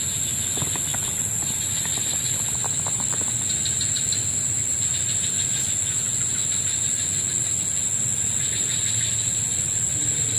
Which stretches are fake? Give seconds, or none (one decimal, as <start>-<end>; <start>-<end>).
none